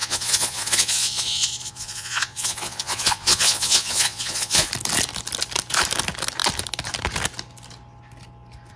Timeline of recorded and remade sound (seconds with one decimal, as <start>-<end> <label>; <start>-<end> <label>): 0.0-4.7 remade; 4.7-8.8 recorded